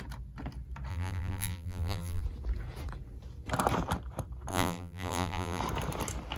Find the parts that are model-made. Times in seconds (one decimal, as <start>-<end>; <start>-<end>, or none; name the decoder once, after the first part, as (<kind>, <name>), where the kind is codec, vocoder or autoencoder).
0.9-2.2 (vocoder, BigVGAN v2); 4.5-5.6